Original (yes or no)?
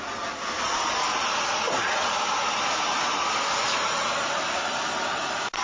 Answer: yes